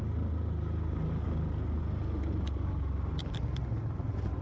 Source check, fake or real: real